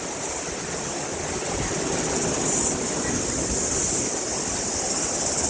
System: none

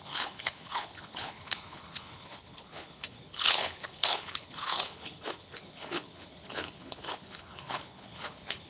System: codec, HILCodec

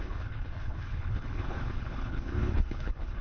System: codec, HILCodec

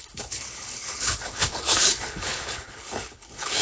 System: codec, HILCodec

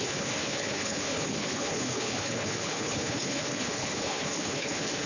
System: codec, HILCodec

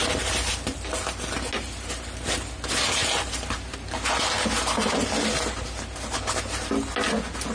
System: none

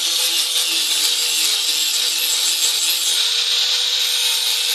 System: none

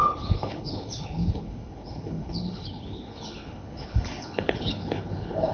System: codec, HILCodec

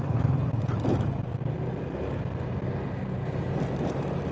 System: none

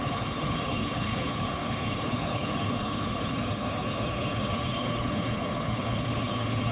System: codec, HILCodec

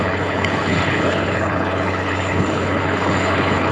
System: codec, HILCodec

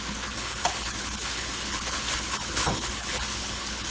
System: codec, HILCodec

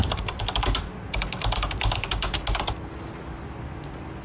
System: none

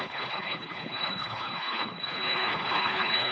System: codec, HILCodec